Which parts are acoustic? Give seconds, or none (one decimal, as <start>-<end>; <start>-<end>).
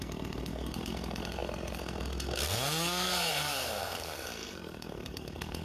none